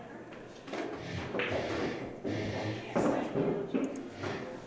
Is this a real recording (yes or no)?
yes